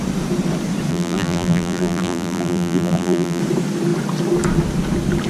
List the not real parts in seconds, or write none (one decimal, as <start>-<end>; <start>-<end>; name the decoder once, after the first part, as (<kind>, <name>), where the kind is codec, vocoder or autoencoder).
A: 0.9-3.4 (vocoder, BigVGAN v2)